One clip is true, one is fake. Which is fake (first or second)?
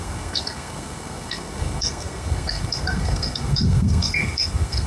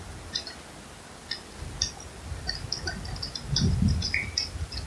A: first